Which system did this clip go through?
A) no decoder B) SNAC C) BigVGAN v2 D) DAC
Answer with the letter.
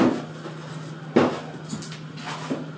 A